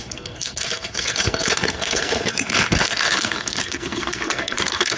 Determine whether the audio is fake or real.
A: fake